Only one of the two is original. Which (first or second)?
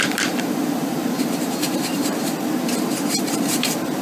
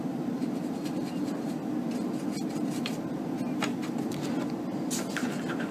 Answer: second